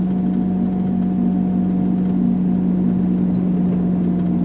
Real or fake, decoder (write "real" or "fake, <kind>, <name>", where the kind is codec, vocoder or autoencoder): real